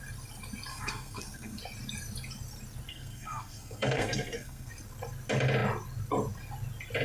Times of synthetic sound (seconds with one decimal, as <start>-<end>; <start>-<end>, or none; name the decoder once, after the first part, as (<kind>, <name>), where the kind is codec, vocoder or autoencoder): 0.7-1.6 (codec, SNAC); 2.9-4.7